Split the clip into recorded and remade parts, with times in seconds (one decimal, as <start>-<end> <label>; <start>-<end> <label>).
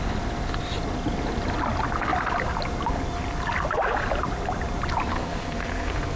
0.0-5.1 recorded; 5.1-6.2 remade